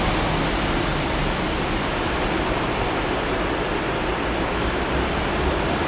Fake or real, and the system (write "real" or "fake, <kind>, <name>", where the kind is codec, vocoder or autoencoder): real